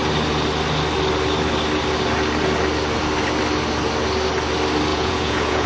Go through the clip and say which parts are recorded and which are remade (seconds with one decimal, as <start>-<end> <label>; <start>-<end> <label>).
0.0-4.9 recorded; 4.9-5.7 remade